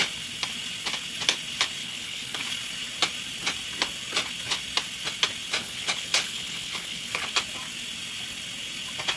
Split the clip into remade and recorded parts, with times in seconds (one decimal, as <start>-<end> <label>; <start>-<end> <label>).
0.0-1.8 recorded; 1.8-2.4 remade; 2.4-5.6 recorded; 5.6-7.3 remade; 7.3-9.2 recorded